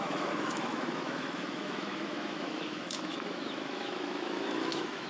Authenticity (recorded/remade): remade